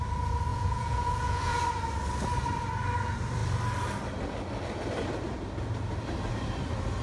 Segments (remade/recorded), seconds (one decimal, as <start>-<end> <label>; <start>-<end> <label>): 0.0-0.5 recorded; 0.5-1.6 remade; 1.6-7.0 recorded